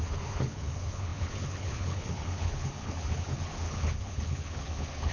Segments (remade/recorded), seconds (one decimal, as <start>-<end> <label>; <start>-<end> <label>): 0.0-5.1 remade